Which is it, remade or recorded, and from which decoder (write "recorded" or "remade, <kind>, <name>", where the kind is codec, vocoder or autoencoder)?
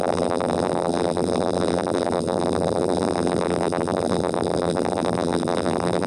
remade, vocoder, BigVGAN v2